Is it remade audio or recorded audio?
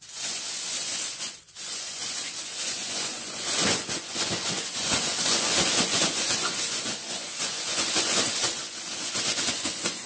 remade